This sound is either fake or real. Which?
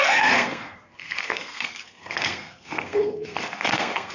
fake